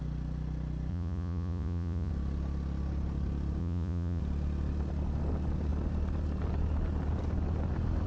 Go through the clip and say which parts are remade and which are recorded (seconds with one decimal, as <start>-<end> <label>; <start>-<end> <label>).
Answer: 0.0-0.9 recorded; 0.9-2.1 remade; 2.1-3.6 recorded; 3.6-4.2 remade; 4.2-8.1 recorded